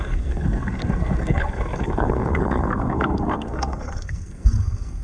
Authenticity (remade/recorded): remade